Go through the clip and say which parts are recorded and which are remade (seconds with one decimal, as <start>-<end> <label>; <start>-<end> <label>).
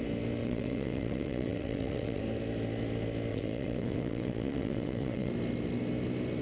0.0-0.4 recorded; 0.4-2.2 remade; 2.2-3.3 recorded; 3.3-5.3 remade; 5.3-6.4 recorded